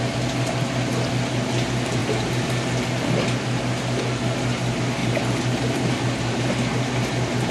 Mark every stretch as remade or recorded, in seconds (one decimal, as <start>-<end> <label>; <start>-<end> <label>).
0.0-2.0 recorded; 2.0-2.5 remade; 2.5-5.0 recorded; 5.0-6.4 remade; 6.4-7.5 recorded